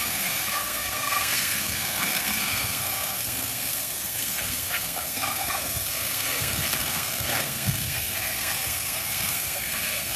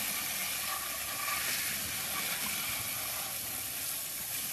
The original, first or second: second